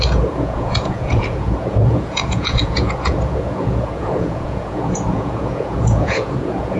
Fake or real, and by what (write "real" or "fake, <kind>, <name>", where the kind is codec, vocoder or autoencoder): fake, vocoder, Vocos